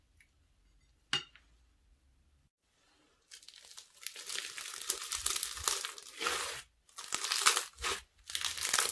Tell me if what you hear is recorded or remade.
recorded